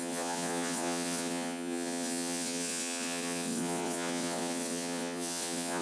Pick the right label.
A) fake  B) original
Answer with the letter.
A